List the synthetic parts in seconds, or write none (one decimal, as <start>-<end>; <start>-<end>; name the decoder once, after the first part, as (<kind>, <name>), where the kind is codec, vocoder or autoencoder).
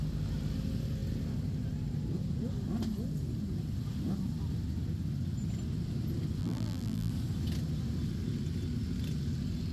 6.4-7.1 (vocoder, BigVGAN v2)